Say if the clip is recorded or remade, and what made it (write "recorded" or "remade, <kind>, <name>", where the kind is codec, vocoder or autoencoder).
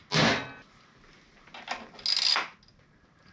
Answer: recorded